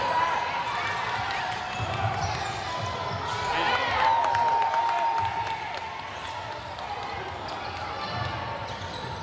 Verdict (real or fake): real